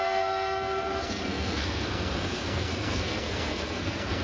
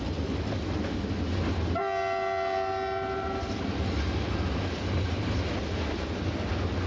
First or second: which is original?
second